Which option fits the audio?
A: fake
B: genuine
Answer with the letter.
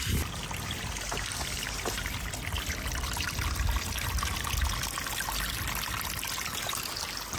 B